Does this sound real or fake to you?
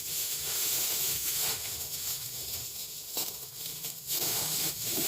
fake